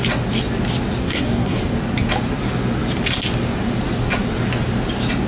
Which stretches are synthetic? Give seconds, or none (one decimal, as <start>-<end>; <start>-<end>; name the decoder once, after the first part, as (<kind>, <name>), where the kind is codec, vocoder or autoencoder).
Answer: 1.0-1.6 (codec, SNAC)